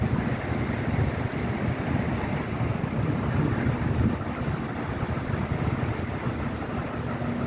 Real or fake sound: real